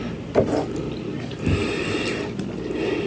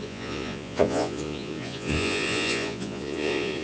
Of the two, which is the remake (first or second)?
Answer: second